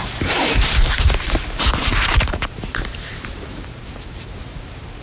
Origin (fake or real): fake